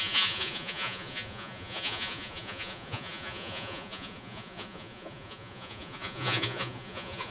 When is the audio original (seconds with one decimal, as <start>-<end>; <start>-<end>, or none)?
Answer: none